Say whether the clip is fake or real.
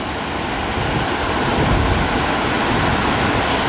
real